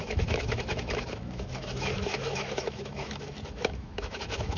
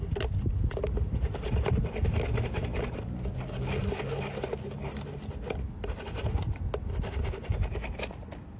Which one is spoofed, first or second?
first